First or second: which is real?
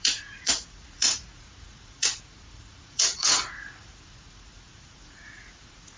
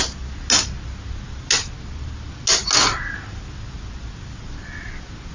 second